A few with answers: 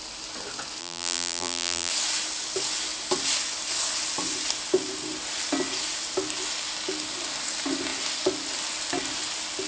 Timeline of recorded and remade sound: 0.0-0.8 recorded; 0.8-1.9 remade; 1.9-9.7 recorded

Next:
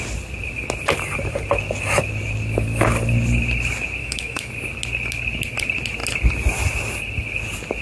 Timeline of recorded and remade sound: 0.0-4.0 recorded; 4.0-4.5 remade; 4.5-7.8 recorded

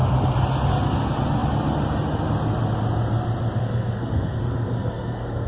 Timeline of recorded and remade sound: 0.0-3.6 recorded; 3.6-5.5 remade